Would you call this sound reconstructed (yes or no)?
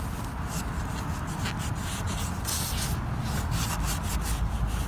no